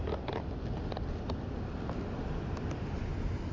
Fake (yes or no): no